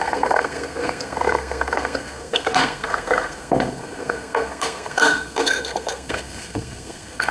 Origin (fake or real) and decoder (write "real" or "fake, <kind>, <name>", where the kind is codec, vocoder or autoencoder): fake, codec, SNAC